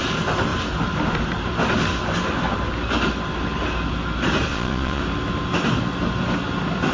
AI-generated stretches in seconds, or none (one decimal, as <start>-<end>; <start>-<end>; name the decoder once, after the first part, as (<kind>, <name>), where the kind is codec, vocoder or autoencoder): 4.5-5.0 (vocoder, Vocos)